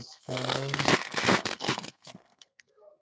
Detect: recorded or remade remade